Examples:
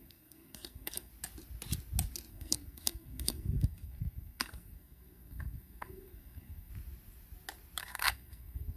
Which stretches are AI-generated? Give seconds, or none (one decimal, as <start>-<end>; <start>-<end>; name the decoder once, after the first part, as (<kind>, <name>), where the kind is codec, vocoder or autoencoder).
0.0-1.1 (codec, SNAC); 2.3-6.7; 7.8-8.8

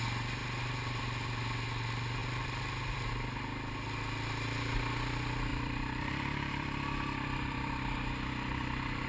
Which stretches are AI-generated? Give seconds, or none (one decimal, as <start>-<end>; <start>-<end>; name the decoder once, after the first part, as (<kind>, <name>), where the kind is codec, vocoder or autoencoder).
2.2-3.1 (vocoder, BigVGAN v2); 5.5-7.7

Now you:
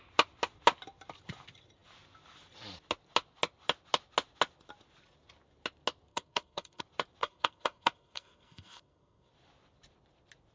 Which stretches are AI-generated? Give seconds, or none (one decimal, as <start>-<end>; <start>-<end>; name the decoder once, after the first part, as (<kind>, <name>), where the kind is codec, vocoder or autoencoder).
6.1-6.8 (codec, SNAC); 7.2-9.3

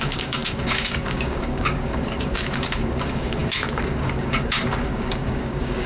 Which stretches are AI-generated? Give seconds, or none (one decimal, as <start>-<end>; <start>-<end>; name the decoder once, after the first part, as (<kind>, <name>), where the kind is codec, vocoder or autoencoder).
0.0-5.9 (codec, DAC)

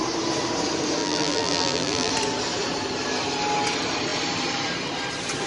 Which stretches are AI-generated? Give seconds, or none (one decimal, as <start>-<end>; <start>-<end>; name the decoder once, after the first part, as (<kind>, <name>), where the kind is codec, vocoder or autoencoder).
1.0-2.1 (vocoder, BigVGAN v2)

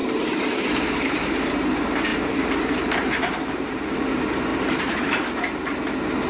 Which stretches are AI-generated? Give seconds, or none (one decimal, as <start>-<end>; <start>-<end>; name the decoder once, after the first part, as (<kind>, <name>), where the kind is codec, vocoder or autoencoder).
0.0-1.5 (vocoder, BigVGAN v2); 2.1-4.1; 4.5-5.4

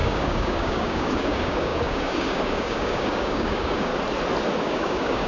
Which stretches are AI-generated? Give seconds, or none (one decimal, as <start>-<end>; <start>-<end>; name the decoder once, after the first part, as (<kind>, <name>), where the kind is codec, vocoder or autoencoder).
0.0-3.9 (codec, DAC); 4.6-5.3

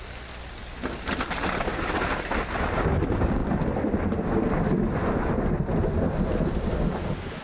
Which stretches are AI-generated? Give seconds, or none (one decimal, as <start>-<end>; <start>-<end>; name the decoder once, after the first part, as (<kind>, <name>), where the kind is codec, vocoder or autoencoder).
none